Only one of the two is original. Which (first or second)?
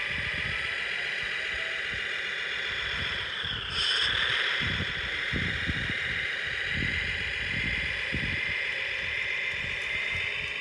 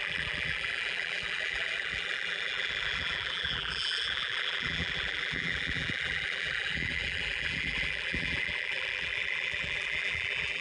first